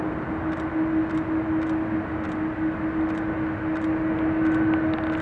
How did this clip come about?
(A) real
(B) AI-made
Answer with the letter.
A